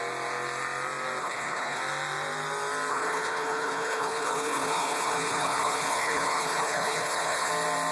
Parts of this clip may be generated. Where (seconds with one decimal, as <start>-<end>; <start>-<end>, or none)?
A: 1.2-1.8; 2.9-7.5